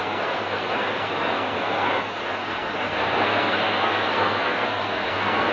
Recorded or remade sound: remade